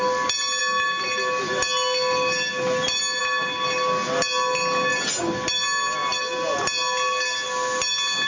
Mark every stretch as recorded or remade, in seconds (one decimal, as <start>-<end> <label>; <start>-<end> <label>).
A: 0.0-8.3 recorded